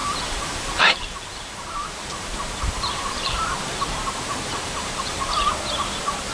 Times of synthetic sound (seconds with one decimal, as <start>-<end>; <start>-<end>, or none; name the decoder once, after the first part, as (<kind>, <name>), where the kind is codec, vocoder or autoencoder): 0.0-3.8 (vocoder, BigVGAN v2); 4.5-5.5